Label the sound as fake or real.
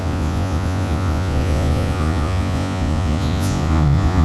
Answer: fake